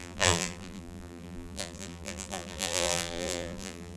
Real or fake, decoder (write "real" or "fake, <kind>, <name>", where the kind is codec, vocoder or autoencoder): fake, vocoder, BigVGAN v2